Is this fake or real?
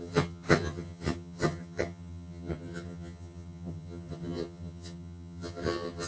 fake